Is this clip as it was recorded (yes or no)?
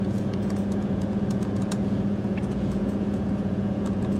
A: no